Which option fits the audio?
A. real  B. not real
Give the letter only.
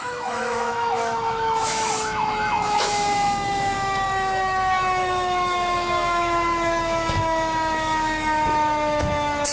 B